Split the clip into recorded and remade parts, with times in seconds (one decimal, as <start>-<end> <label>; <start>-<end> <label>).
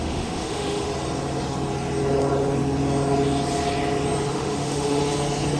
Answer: 0.0-0.9 remade; 0.9-4.3 recorded; 4.3-5.0 remade; 5.0-5.6 recorded